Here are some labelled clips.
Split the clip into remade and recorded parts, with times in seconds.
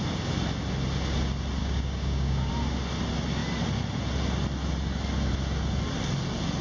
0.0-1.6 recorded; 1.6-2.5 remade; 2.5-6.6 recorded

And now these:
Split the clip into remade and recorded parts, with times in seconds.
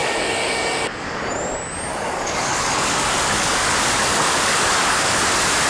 0.0-1.2 remade; 1.2-1.9 recorded; 1.9-5.2 remade; 5.2-5.7 recorded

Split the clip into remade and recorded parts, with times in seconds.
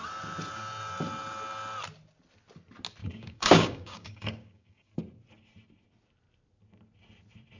0.0-3.0 recorded; 3.0-4.9 remade; 4.9-7.6 recorded